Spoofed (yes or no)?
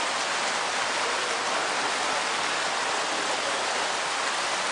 no